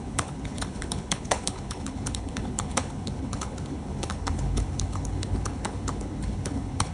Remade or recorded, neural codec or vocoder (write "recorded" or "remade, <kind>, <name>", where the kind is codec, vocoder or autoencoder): remade, codec, HILCodec